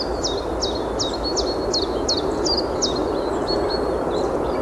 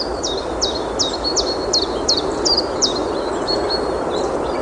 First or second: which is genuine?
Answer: first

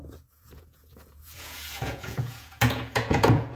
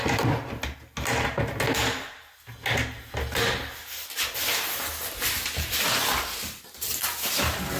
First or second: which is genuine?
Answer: second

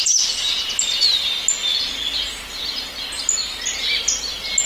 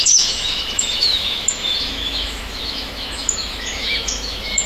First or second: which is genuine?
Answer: first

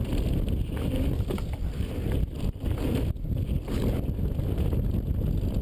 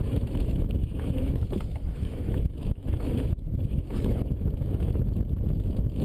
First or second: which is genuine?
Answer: first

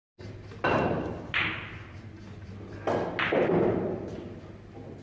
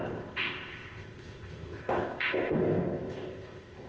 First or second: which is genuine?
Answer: first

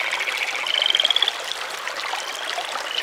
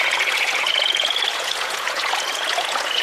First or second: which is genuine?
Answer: first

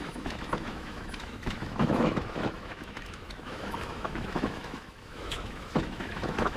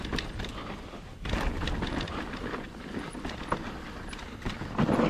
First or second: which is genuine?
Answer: second